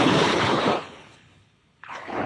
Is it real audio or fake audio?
fake